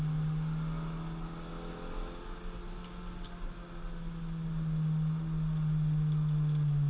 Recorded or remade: recorded